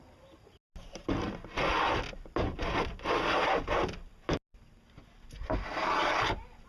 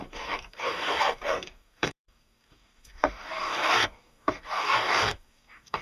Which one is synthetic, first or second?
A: second